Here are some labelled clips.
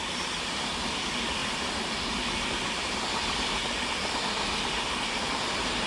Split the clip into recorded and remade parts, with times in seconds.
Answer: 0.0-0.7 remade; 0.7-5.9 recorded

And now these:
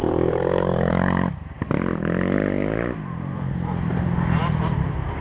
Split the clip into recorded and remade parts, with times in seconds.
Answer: 0.0-5.2 remade

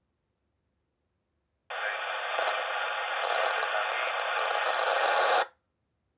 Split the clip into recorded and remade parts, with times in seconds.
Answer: 0.0-6.2 recorded

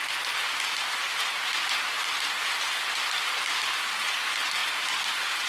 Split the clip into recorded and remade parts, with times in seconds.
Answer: 0.0-1.0 recorded; 1.0-1.5 remade; 1.5-5.5 recorded

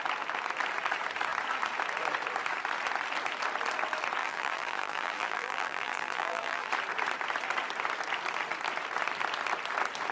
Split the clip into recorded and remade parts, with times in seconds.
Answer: 0.0-4.2 recorded; 4.2-6.7 remade; 6.7-10.1 recorded

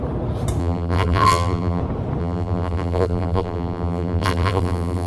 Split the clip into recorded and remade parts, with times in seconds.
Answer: 0.0-0.6 recorded; 0.6-1.8 remade; 1.8-2.2 recorded; 2.2-5.1 remade